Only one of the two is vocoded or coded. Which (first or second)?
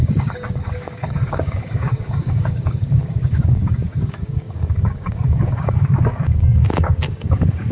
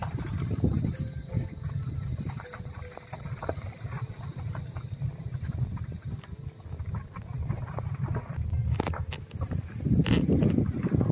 first